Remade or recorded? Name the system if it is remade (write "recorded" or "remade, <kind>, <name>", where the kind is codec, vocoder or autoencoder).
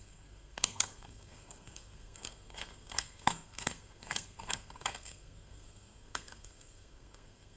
remade, codec, SNAC